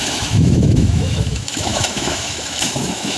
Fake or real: fake